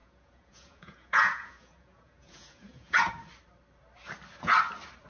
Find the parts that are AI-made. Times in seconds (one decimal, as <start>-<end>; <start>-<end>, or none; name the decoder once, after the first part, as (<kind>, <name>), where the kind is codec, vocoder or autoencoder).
0.0-3.1 (vocoder, Vocos)

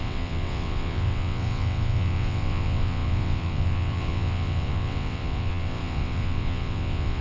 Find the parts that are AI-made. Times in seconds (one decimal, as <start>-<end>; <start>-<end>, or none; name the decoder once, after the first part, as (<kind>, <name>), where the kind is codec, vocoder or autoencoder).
0.0-7.2 (vocoder, WaveNeXt)

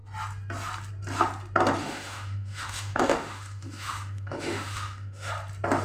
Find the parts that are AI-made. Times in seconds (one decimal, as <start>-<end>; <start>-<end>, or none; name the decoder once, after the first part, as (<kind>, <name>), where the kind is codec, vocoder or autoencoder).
1.8-5.3 (autoencoder, DAC-VAE)

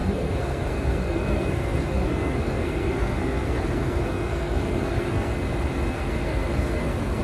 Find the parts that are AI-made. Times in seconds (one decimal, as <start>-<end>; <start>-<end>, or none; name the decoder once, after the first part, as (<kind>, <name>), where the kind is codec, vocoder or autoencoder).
0.0-5.3 (codec, SNAC); 5.9-7.2

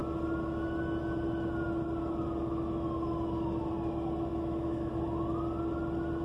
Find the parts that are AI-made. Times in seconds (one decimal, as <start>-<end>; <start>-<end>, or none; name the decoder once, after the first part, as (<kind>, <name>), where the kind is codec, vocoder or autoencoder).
4.3-4.9 (autoencoder, DAC-VAE)